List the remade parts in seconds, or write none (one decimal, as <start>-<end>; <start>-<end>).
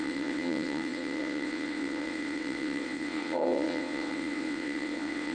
0.0-5.3